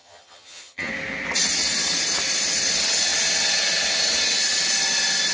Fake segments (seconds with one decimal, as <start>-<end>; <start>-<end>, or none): 0.0-0.9